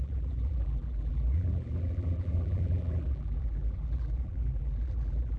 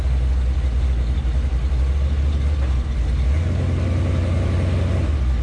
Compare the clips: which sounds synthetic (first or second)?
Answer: first